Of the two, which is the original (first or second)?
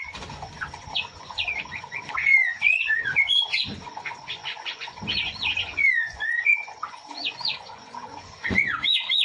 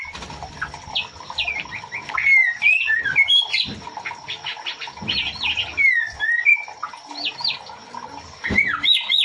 second